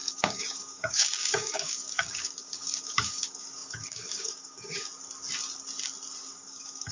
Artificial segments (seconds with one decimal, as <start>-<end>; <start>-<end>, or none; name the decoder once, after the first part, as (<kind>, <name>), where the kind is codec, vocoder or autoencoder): 0.0-4.9 (codec, DAC); 6.2-6.9